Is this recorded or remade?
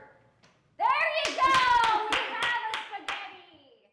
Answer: recorded